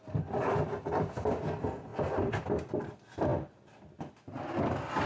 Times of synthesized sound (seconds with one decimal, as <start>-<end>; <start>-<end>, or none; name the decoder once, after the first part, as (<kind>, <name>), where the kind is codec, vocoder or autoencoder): none